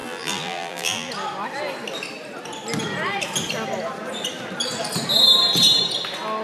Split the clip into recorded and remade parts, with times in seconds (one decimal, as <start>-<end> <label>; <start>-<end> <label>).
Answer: 0.0-1.1 remade; 1.1-6.4 recorded